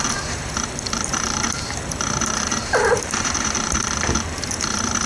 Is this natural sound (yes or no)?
no